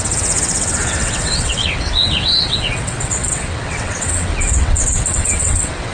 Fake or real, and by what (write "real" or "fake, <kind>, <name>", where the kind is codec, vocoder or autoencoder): fake, vocoder, WaveNeXt